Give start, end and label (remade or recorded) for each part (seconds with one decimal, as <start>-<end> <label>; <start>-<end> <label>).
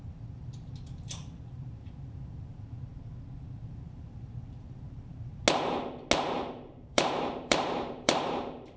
0.0-2.9 remade; 2.9-3.6 recorded; 3.6-5.3 remade; 5.3-6.5 recorded; 6.5-8.8 remade